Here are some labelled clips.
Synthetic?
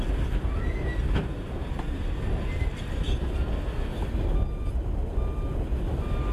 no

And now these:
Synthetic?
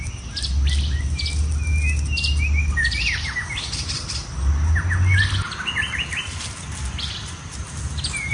no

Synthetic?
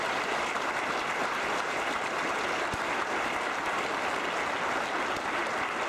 no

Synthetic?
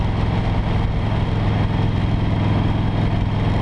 no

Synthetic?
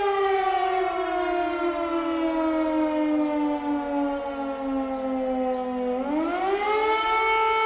no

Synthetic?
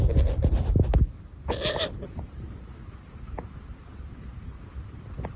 no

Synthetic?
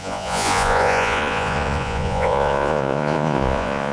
yes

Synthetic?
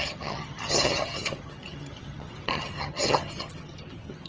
yes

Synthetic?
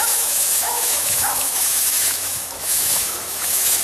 yes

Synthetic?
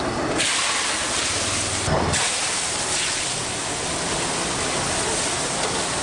no